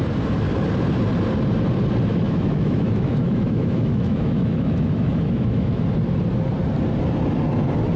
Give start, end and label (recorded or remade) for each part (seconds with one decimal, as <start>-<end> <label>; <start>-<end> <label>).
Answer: 0.0-2.1 recorded; 2.1-5.8 remade; 5.8-8.0 recorded